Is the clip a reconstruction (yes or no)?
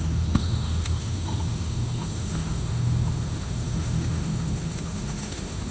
yes